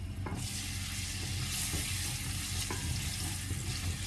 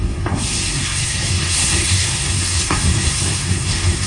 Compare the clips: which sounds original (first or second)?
first